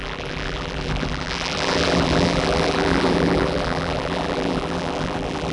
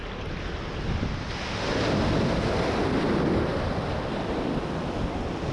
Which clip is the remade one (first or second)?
first